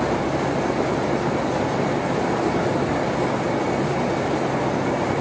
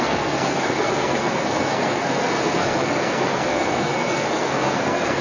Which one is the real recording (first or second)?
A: first